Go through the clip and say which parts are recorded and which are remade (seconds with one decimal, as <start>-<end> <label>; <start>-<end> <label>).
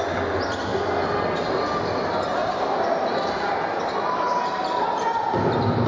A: 0.0-2.4 recorded; 2.4-3.6 remade; 3.6-5.9 recorded